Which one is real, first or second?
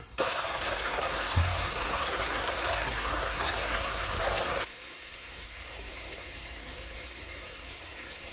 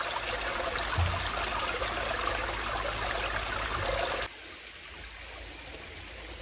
second